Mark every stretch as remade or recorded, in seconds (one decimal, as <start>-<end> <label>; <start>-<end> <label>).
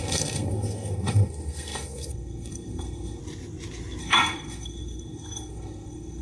0.0-3.2 remade; 3.2-4.0 recorded; 4.0-6.2 remade